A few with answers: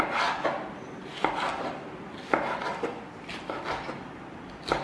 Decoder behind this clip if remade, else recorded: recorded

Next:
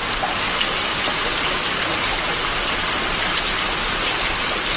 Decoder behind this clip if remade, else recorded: recorded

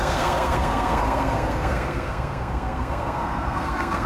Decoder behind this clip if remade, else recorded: remade, codec, SNAC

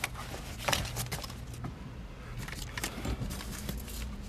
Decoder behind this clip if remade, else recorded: recorded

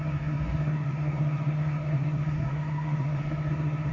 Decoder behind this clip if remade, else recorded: remade, codec, SNAC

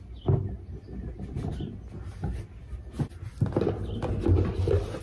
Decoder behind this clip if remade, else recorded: recorded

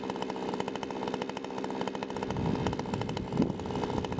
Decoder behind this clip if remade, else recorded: recorded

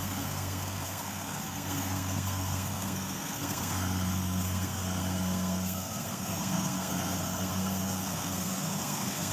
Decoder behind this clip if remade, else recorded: remade, codec, SNAC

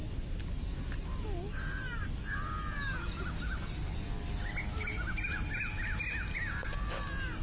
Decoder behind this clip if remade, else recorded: recorded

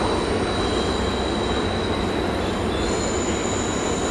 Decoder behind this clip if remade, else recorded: recorded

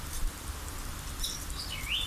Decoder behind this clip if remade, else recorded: recorded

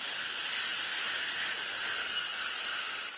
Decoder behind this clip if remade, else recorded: recorded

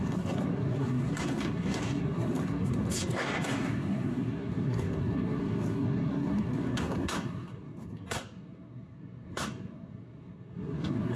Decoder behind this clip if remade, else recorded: remade, codec, SNAC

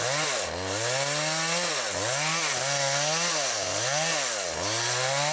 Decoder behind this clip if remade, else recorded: recorded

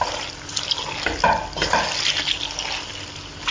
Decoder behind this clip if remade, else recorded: recorded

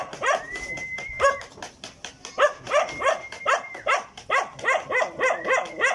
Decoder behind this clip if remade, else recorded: recorded